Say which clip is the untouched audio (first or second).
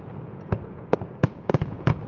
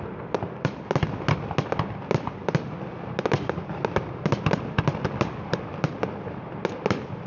second